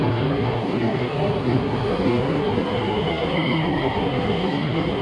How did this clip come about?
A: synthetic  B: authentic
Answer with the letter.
A